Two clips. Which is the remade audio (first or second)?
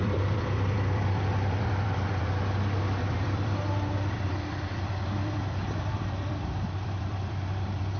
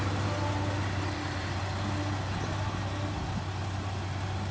first